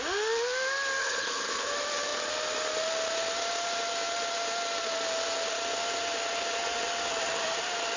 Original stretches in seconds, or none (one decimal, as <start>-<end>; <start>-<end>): 0.0-1.0; 1.7-8.0